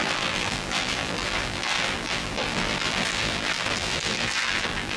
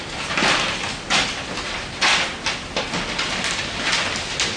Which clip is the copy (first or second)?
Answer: first